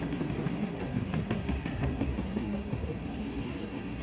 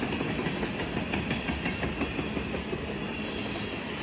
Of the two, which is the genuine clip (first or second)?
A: second